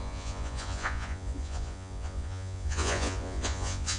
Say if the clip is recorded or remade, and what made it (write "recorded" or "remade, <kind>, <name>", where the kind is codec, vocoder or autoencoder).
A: remade, vocoder, Vocos